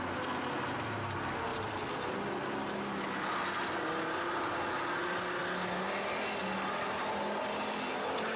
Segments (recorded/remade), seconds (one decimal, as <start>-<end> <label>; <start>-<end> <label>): 0.0-8.4 recorded